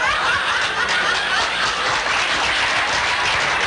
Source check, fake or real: real